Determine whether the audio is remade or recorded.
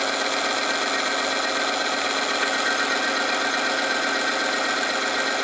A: recorded